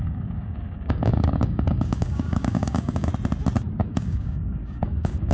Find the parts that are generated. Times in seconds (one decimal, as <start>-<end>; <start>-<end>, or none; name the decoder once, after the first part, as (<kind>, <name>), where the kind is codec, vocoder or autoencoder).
0.0-3.1 (codec, DAC); 3.9-5.3